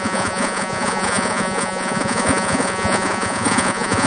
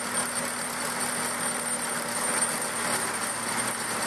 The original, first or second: second